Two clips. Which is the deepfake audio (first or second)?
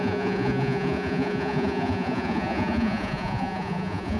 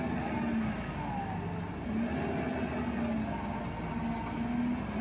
first